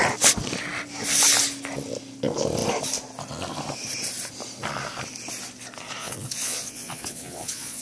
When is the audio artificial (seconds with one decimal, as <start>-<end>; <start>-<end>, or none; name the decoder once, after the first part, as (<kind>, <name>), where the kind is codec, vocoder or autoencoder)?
6.0-7.8 (vocoder, Vocos)